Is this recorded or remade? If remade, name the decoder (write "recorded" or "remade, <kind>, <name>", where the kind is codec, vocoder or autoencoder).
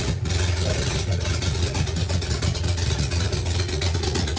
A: remade, vocoder, Vocos